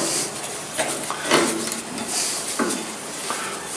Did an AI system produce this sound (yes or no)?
no